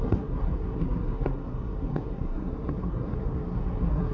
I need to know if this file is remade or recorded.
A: remade